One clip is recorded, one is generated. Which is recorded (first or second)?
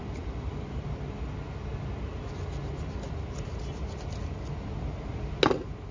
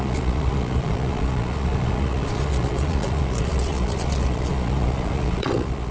first